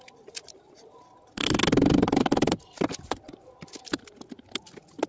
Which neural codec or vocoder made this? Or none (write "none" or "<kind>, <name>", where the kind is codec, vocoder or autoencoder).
none